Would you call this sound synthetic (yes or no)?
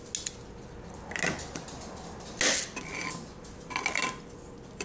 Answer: no